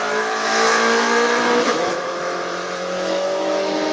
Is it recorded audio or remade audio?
remade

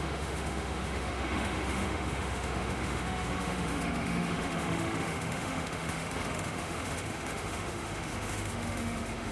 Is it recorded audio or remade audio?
remade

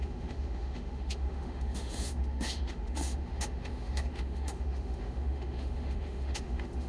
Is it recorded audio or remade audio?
remade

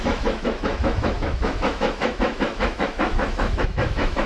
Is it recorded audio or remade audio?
remade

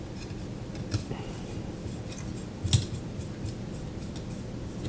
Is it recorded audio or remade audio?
recorded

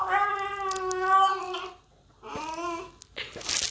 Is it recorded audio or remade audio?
recorded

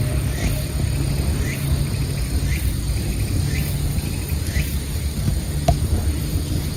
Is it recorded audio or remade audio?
recorded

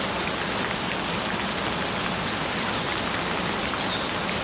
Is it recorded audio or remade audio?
recorded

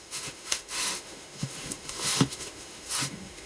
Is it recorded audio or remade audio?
remade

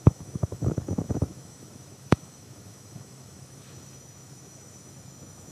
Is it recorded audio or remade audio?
remade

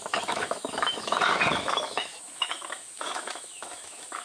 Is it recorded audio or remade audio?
remade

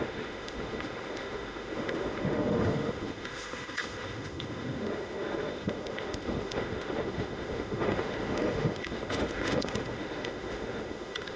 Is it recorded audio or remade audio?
remade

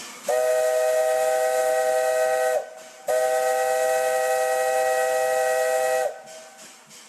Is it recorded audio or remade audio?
recorded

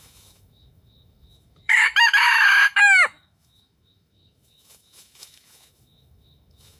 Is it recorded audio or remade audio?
remade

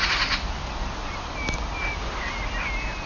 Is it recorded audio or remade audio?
recorded